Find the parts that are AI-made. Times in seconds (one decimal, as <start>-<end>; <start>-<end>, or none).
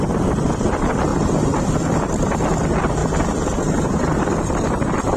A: none